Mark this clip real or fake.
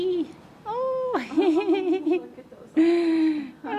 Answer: real